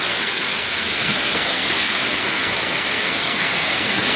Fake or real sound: fake